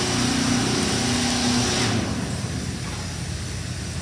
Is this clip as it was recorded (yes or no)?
yes